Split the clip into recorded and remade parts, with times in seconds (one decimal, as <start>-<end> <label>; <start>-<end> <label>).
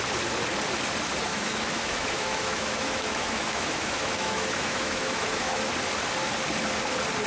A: 0.0-1.3 recorded; 1.3-5.7 remade; 5.7-7.3 recorded